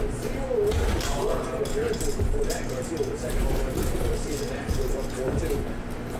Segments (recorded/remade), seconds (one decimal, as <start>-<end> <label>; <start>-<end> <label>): 0.0-2.1 recorded; 2.1-5.4 remade; 5.4-6.2 recorded

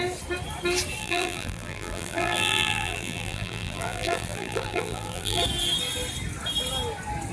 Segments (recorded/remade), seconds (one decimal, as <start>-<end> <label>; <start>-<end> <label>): 0.0-1.0 recorded; 1.0-5.4 remade; 5.4-7.3 recorded

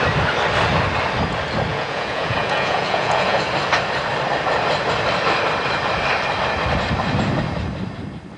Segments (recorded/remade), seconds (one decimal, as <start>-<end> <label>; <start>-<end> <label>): 0.0-1.7 recorded; 1.7-3.4 remade; 3.4-8.4 recorded

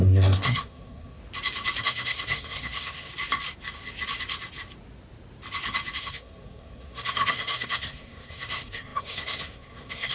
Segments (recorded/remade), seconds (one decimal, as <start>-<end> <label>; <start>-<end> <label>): 0.0-1.2 remade; 1.2-1.8 recorded; 1.8-3.1 remade; 3.1-6.0 recorded; 6.0-10.1 remade

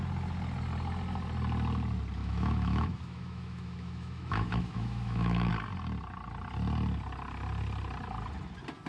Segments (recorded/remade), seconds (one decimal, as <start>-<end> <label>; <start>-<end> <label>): 0.0-2.2 recorded; 2.2-5.5 remade; 5.5-8.9 recorded